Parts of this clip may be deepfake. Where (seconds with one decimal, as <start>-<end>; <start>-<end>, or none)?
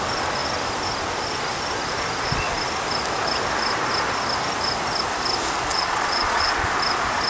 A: 5.7-6.6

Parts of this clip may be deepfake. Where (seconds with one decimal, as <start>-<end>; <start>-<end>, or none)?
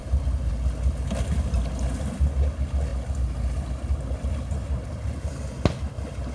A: none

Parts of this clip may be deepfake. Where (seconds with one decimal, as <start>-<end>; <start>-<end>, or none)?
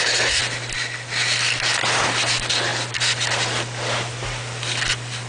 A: none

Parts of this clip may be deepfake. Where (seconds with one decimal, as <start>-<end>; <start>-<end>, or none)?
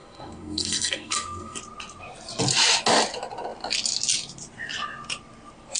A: 0.0-1.6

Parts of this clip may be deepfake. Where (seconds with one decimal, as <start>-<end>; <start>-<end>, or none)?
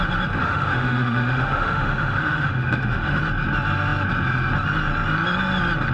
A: 0.4-3.2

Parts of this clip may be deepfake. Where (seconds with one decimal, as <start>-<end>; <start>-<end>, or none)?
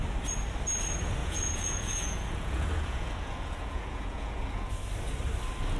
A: 1.2-4.7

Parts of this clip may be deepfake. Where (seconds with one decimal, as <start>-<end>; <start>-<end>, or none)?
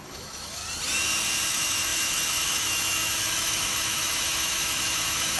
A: 0.0-0.6; 1.5-5.4